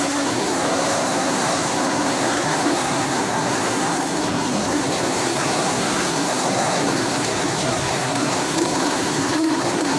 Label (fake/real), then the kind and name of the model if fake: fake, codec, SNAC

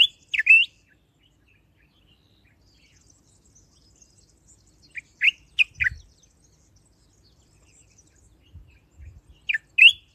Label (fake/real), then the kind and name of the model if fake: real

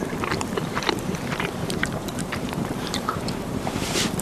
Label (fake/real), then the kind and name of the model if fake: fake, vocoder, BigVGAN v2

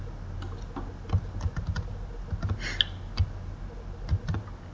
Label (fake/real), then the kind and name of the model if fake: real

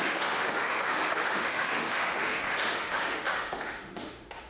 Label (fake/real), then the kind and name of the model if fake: fake, autoencoder, DAC-VAE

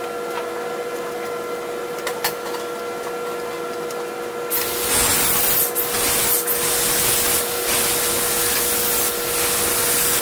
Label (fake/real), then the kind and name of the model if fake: real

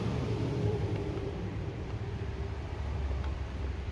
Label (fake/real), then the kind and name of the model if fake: fake, vocoder, BigVGAN v2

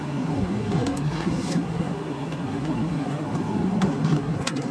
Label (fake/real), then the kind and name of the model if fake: fake, codec, SNAC